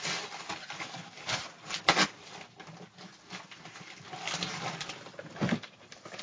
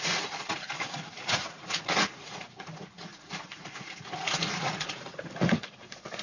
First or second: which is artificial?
second